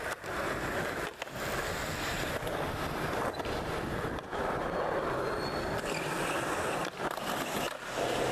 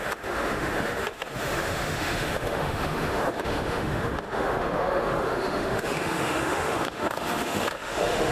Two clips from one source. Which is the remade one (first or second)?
second